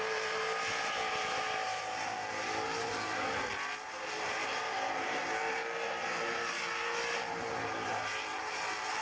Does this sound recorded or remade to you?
recorded